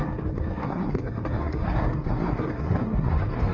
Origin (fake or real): fake